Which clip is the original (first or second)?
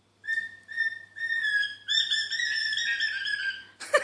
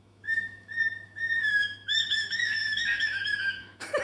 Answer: first